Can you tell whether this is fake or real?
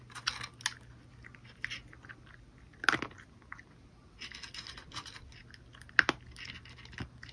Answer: real